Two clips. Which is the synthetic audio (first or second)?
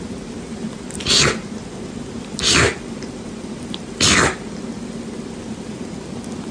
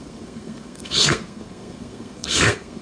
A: second